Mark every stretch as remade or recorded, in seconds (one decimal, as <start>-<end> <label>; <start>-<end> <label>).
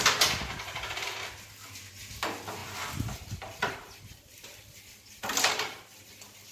0.0-6.5 recorded